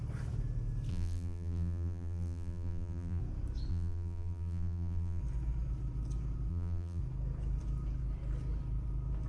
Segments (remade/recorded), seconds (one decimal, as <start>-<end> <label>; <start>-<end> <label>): 0.0-0.9 recorded; 0.9-3.2 remade; 3.2-3.7 recorded; 3.7-5.2 remade; 5.2-6.5 recorded; 6.5-7.0 remade; 7.0-9.3 recorded